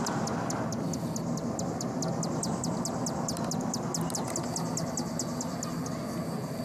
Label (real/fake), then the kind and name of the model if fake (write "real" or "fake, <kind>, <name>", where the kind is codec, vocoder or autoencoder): real